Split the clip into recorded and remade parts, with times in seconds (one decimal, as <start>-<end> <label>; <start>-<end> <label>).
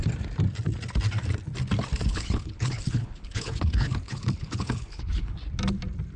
0.0-2.1 recorded; 2.1-5.4 remade; 5.4-6.2 recorded